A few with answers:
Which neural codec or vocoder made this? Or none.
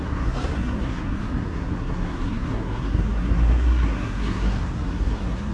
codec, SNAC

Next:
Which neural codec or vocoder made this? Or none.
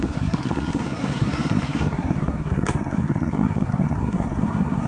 codec, SNAC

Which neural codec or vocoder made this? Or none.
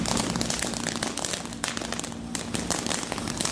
none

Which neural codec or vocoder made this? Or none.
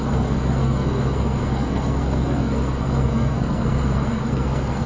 codec, SNAC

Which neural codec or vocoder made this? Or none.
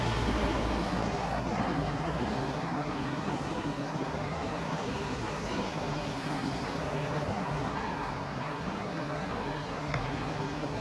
codec, SNAC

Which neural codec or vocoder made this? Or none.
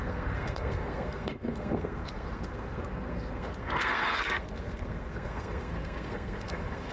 codec, SNAC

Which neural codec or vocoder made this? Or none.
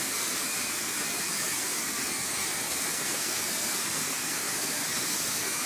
codec, SNAC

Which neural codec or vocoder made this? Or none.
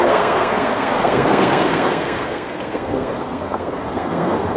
codec, SNAC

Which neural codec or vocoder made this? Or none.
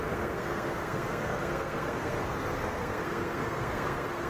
codec, SNAC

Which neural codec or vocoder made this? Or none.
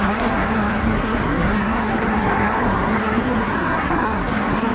codec, SNAC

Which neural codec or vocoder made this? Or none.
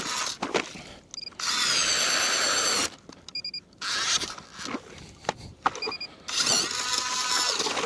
none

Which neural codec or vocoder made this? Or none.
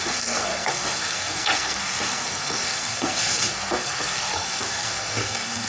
codec, SNAC